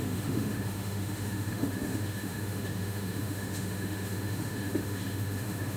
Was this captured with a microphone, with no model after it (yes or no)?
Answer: no